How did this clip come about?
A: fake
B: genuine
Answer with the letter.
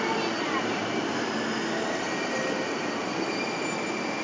B